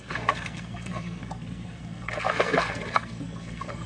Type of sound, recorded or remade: remade